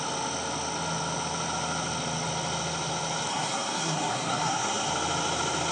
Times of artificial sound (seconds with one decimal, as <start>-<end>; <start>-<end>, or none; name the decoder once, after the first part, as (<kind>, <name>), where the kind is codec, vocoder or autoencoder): 3.3-4.9 (codec, SNAC)